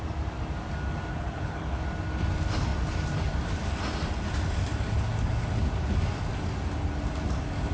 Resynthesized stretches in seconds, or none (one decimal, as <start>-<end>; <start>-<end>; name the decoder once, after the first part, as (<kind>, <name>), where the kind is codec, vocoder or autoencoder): 1.1-1.8 (codec, HILCodec)